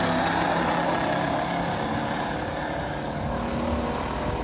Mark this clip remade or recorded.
recorded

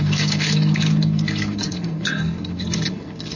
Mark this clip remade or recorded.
remade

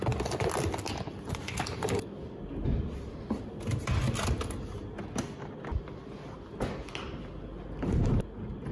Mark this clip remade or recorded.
recorded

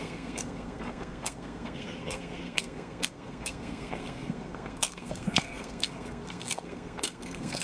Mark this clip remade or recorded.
remade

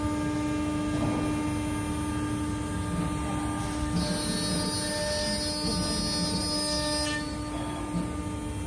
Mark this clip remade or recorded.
recorded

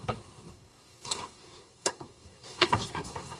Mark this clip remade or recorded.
remade